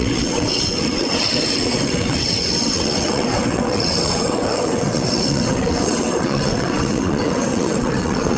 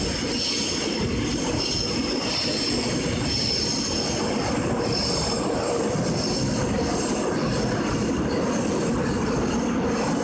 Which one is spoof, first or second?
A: first